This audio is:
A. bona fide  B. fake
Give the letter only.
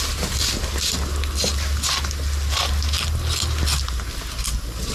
A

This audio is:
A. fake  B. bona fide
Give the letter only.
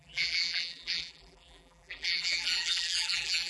A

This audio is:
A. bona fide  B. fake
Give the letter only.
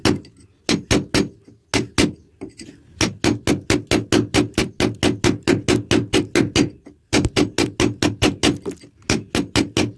A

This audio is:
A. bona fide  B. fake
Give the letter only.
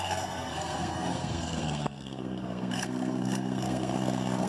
B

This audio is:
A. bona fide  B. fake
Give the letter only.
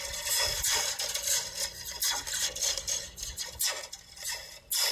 A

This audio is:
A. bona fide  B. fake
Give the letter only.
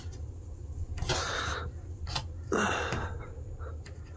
A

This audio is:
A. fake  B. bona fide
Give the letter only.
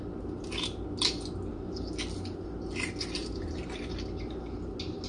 B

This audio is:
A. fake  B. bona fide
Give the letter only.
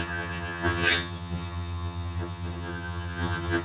A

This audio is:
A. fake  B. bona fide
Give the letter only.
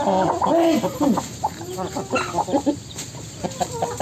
B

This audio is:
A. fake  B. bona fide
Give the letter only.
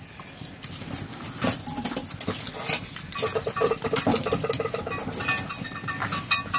B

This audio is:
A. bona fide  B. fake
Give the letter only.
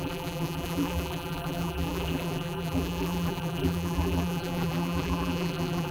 B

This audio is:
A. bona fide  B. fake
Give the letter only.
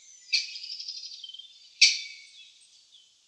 A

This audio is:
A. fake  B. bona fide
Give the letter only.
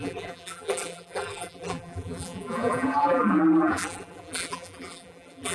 A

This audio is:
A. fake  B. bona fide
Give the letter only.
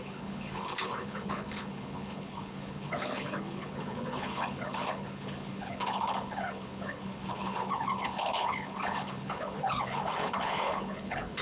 A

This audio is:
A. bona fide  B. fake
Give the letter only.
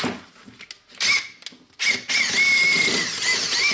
A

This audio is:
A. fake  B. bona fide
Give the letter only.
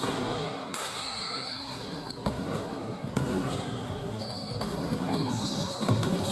A